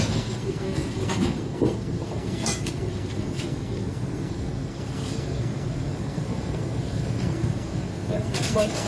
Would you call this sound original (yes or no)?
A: no